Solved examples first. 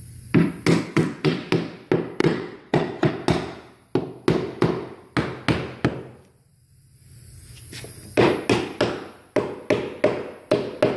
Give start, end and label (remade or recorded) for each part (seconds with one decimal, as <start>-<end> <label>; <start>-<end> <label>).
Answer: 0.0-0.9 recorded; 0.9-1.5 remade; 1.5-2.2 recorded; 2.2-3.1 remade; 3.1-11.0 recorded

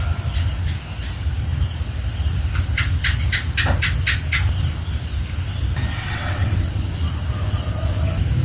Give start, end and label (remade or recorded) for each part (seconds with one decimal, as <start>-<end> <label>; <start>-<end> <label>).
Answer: 0.0-6.0 recorded; 6.0-6.7 remade; 6.7-8.4 recorded

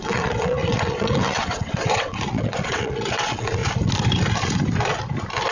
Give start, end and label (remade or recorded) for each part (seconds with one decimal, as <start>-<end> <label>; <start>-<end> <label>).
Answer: 0.0-3.6 remade; 3.6-5.5 recorded

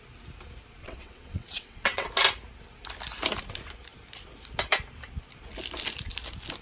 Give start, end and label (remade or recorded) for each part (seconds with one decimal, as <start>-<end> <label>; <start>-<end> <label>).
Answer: 0.0-0.8 recorded; 0.8-2.1 remade; 2.1-6.6 recorded

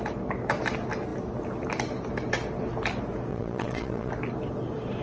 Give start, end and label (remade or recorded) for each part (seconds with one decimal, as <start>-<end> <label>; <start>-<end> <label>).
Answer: 0.0-3.3 recorded; 3.3-4.1 remade; 4.1-5.0 recorded